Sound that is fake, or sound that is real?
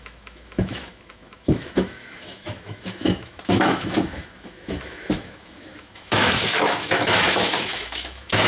fake